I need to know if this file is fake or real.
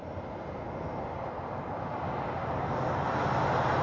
real